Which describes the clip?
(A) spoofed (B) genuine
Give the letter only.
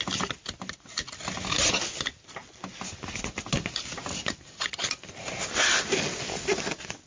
B